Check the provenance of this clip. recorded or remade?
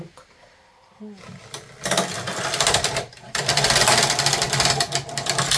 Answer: recorded